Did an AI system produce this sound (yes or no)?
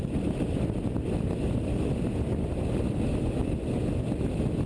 no